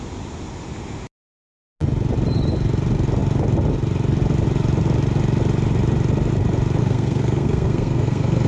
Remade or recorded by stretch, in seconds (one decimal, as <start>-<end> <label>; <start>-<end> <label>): 0.0-6.8 recorded; 6.8-8.5 remade